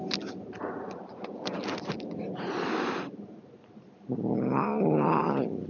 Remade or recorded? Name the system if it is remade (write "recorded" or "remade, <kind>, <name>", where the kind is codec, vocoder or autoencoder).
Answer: recorded